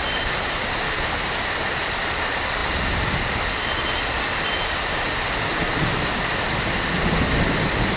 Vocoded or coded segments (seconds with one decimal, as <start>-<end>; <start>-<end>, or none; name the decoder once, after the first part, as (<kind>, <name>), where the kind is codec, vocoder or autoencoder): none